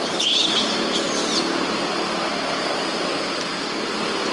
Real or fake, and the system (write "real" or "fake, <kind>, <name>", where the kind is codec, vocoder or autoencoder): real